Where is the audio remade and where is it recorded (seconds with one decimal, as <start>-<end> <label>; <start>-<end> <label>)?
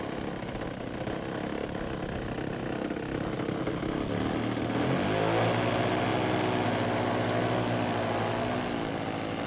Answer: 0.0-9.5 recorded